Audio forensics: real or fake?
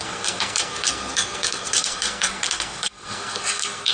fake